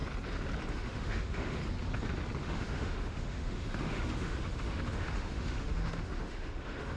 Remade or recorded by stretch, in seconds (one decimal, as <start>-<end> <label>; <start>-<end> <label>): 0.0-0.7 recorded; 0.7-1.6 remade; 1.6-2.4 recorded; 2.4-7.0 remade